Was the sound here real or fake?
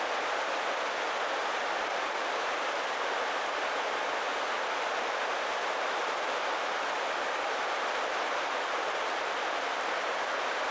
real